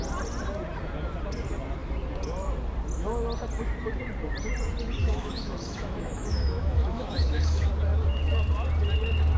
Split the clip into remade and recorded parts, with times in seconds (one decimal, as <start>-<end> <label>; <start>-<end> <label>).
0.0-5.0 recorded; 5.0-7.7 remade; 7.7-9.4 recorded